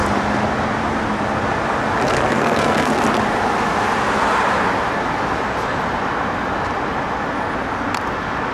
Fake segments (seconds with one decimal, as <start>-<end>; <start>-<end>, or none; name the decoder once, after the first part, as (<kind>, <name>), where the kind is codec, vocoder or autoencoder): 2.1-3.0 (codec, SNAC)